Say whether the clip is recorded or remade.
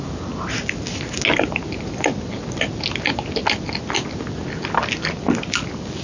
recorded